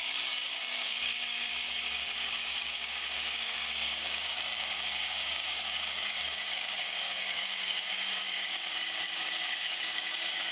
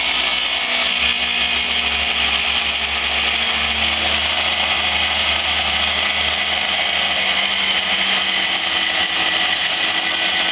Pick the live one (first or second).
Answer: second